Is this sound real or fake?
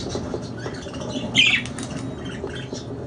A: real